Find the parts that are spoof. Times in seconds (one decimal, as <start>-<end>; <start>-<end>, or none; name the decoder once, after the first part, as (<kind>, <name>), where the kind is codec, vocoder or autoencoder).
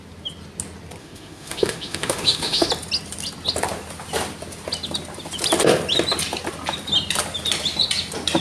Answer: 1.0-2.7 (autoencoder, DAC-VAE)